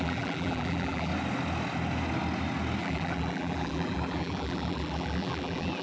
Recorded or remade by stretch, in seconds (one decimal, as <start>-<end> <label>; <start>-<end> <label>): 0.0-1.1 remade; 1.1-2.8 recorded; 2.8-5.8 remade